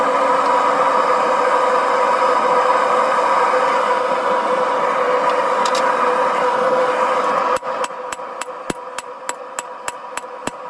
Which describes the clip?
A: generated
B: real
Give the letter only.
B